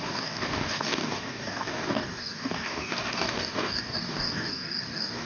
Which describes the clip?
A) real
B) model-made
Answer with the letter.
B